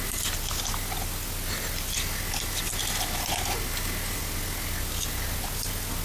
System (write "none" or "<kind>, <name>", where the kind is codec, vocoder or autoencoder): none